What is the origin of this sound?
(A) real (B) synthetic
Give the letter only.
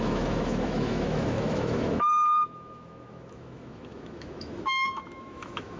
B